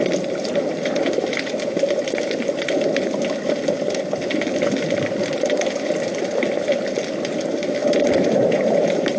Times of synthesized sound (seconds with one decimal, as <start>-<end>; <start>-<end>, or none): 7.8-9.2